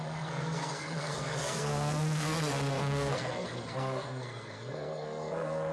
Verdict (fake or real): fake